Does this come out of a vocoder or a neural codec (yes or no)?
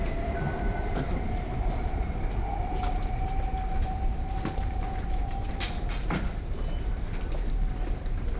yes